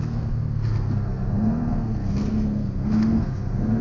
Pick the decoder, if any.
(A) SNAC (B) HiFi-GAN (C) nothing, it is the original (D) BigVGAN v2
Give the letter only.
A